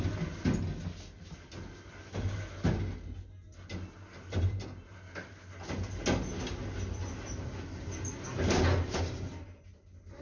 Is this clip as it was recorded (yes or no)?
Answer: yes